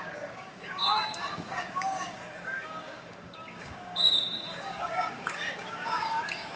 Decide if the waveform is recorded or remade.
remade